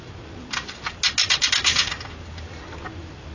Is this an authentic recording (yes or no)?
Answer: yes